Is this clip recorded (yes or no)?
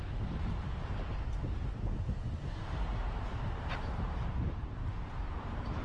no